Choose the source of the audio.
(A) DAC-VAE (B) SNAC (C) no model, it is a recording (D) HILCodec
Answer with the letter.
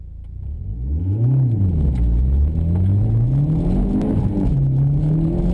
C